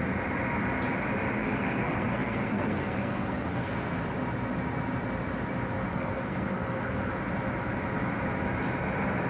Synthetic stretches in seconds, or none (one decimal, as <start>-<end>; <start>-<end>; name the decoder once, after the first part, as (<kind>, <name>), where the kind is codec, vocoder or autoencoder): 1.4-3.7 (codec, SNAC); 5.9-7.1